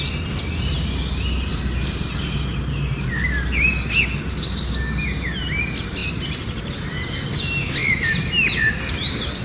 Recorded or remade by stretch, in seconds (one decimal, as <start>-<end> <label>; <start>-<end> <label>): 0.0-1.5 recorded; 1.5-3.1 remade; 3.1-6.0 recorded; 6.0-6.7 remade; 6.7-7.8 recorded; 7.8-8.8 remade; 8.8-9.4 recorded

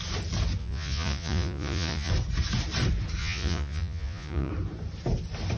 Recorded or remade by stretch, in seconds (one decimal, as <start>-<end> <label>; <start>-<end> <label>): 0.0-0.6 recorded; 0.6-2.1 remade; 2.1-3.2 recorded; 3.2-4.5 remade; 4.5-5.6 recorded

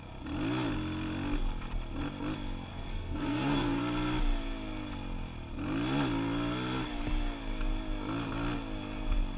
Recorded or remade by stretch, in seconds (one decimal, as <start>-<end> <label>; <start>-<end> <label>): 0.0-2.7 recorded; 2.7-3.8 remade; 3.8-9.4 recorded

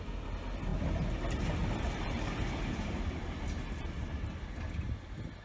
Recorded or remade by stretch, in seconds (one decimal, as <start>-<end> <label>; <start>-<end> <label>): 0.0-1.6 recorded; 1.6-4.1 remade; 4.1-5.4 recorded

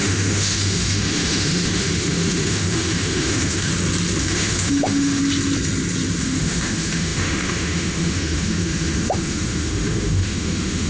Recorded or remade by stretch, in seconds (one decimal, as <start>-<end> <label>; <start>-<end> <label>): 0.0-3.7 remade; 3.7-4.2 recorded; 4.2-5.2 remade; 5.2-6.2 recorded; 6.2-10.9 remade

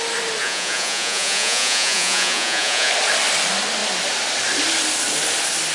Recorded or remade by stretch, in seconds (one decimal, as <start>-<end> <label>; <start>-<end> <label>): 0.0-0.4 recorded; 0.4-2.9 remade; 2.9-5.7 recorded